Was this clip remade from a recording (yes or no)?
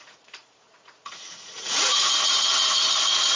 yes